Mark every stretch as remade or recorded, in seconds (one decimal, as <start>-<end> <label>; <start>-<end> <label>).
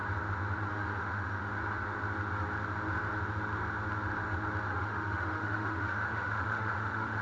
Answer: 0.0-0.7 recorded; 0.7-1.5 remade; 1.5-4.7 recorded; 4.7-7.2 remade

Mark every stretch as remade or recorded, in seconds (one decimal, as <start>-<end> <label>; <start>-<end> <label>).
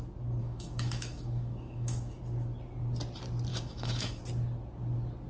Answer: 0.0-0.4 recorded; 0.4-2.2 remade; 2.2-3.5 recorded; 3.5-4.2 remade; 4.2-5.3 recorded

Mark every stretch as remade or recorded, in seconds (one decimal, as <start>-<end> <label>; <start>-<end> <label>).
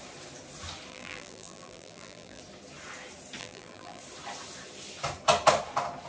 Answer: 0.0-0.9 recorded; 0.9-2.4 remade; 2.4-3.4 recorded; 3.4-4.0 remade; 4.0-6.1 recorded